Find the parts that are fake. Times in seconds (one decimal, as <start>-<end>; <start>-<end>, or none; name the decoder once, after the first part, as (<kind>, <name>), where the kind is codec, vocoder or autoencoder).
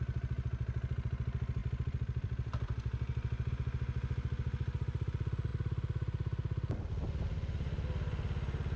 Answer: 1.6-3.5 (vocoder, BigVGAN v2); 5.5-6.9